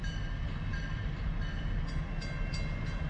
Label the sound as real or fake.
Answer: real